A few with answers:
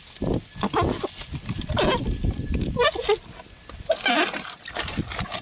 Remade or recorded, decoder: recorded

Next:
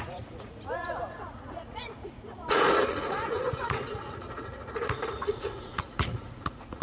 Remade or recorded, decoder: remade, vocoder, Vocos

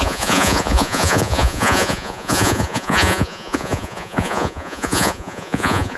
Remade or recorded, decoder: remade, vocoder, Vocos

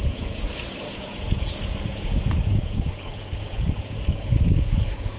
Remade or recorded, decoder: remade, vocoder, Vocos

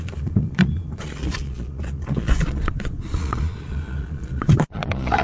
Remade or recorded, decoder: remade, vocoder, Vocos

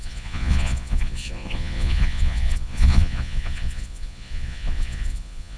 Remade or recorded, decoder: remade, vocoder, Vocos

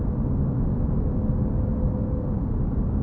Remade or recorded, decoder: recorded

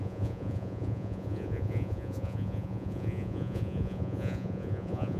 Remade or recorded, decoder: remade, vocoder, Vocos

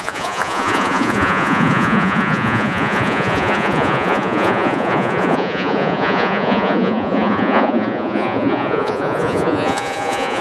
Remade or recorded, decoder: remade, vocoder, Vocos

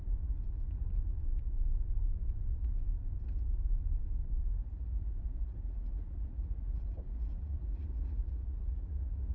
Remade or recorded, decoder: remade, vocoder, Vocos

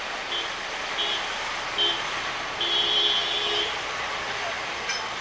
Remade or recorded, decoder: recorded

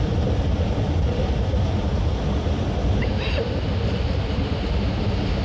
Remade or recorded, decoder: recorded